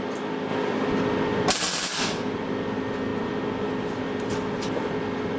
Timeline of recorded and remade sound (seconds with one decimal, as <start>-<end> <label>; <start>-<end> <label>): 0.0-3.1 remade; 3.1-3.8 recorded; 3.8-5.4 remade